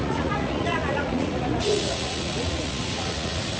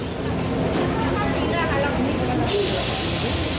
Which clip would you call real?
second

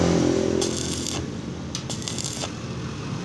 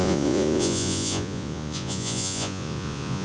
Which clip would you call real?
first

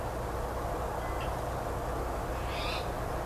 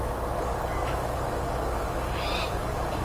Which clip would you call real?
first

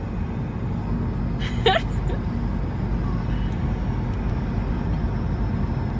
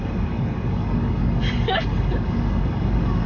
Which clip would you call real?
first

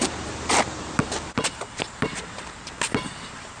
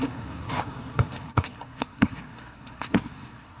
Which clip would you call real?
first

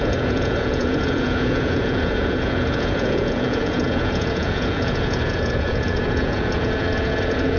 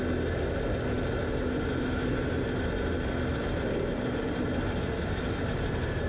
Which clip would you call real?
second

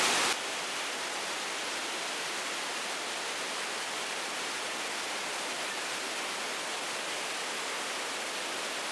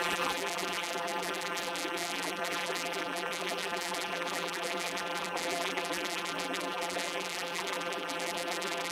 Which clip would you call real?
first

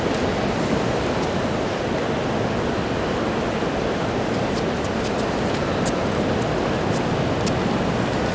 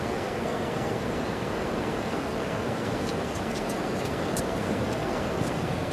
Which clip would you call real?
first